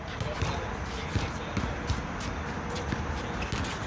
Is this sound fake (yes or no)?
no